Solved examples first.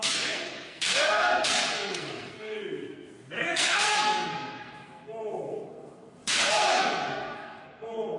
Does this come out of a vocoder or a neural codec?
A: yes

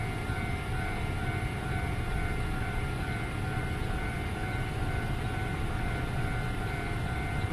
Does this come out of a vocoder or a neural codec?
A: no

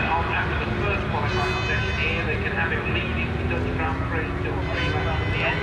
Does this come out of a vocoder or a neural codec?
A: no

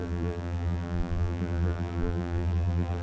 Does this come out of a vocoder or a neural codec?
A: yes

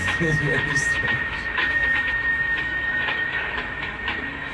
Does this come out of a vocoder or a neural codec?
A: yes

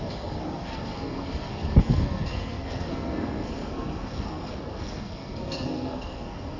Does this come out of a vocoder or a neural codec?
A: yes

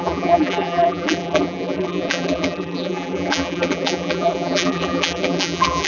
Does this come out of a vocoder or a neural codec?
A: yes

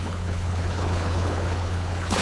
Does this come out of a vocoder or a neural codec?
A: yes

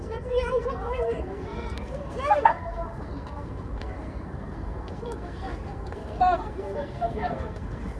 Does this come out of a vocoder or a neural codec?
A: yes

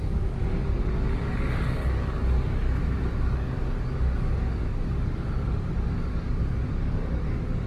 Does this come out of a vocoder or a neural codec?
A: yes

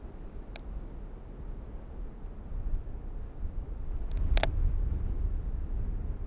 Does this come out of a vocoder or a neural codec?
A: no